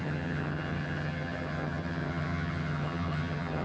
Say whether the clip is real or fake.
fake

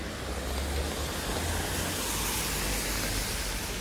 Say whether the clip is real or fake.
real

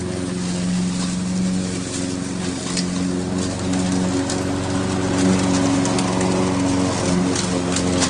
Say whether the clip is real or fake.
real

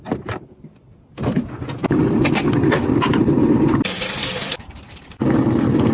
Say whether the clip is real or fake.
real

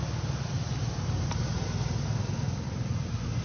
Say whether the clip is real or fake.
real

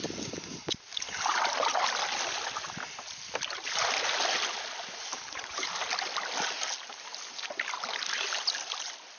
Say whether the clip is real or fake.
real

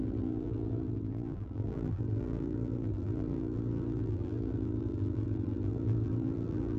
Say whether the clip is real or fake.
fake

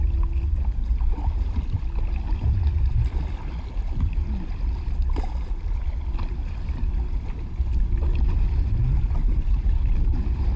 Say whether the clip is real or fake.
real